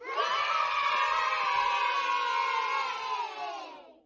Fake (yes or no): no